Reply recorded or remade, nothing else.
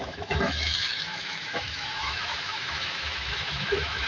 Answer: remade